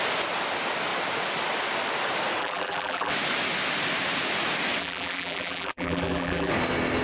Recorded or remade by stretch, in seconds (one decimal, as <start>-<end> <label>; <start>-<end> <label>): 0.0-2.4 recorded; 2.4-3.1 remade; 3.1-4.8 recorded; 4.8-6.5 remade; 6.5-7.0 recorded